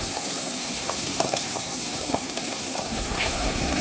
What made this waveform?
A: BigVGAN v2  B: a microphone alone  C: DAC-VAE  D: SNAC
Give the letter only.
D